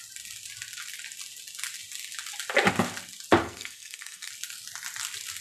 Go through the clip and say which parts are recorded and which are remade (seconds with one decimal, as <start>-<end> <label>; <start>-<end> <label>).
0.0-3.4 recorded; 3.4-4.3 remade; 4.3-5.4 recorded